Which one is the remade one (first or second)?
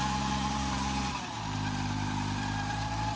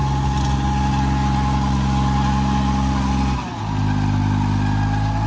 first